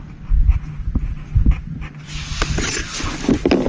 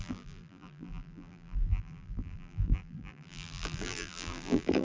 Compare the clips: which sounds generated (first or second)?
second